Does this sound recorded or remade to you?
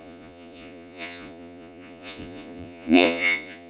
remade